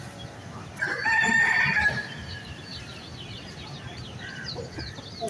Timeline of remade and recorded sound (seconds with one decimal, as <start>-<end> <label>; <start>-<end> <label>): 0.0-2.7 recorded; 2.7-5.3 remade